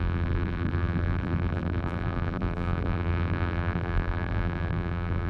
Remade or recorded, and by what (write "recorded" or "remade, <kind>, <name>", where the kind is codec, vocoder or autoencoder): remade, vocoder, BigVGAN v2